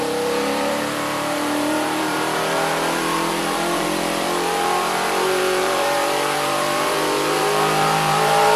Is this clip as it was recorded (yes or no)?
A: no